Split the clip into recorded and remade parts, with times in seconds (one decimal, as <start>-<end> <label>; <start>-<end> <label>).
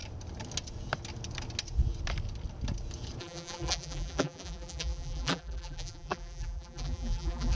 0.0-3.2 recorded; 3.2-7.5 remade